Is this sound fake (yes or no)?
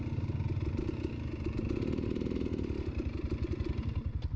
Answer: no